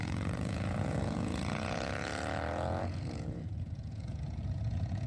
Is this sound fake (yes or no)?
yes